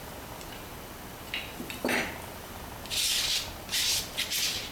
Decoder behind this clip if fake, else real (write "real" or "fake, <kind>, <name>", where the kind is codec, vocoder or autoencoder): real